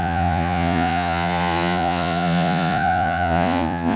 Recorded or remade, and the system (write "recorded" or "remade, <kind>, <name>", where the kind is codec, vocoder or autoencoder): remade, vocoder, Vocos